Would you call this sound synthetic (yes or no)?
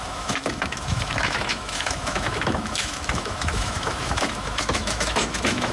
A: yes